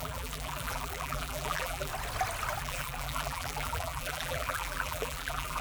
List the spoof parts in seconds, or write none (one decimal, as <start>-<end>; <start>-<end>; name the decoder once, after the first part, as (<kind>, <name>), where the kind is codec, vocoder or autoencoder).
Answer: 0.0-1.9 (vocoder, BigVGAN v2); 2.6-5.6